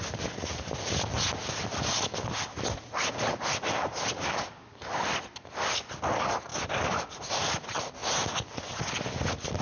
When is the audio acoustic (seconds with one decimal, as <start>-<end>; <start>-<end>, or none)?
0.0-9.6